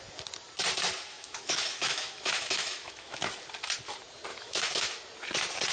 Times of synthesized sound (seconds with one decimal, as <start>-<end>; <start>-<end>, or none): 1.1-3.2; 4.3-4.9